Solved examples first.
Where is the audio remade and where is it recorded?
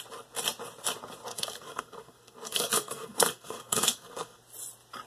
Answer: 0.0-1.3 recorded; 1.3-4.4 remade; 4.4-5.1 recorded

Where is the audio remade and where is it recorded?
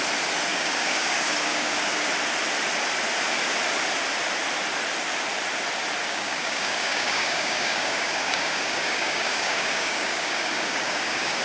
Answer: 0.0-0.5 recorded; 0.5-2.1 remade; 2.1-6.0 recorded; 6.0-11.4 remade